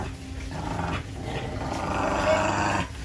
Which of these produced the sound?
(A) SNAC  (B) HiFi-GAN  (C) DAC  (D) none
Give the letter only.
D